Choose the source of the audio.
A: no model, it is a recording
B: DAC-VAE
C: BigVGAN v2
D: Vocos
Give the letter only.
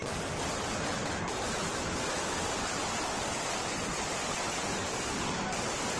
A